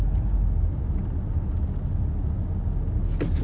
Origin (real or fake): real